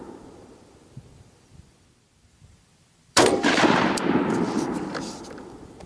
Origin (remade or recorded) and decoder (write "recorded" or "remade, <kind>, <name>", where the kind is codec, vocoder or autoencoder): remade, vocoder, BigVGAN v2